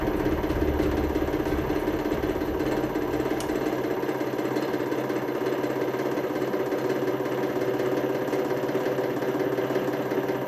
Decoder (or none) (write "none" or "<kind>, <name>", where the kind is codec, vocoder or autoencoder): none